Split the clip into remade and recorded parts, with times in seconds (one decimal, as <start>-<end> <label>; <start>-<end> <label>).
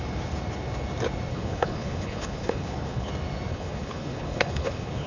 0.0-1.3 recorded; 1.3-3.1 remade; 3.1-3.5 recorded; 3.5-5.1 remade